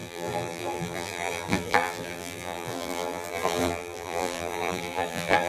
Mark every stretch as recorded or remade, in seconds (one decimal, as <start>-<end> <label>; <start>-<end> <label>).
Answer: 0.0-5.5 remade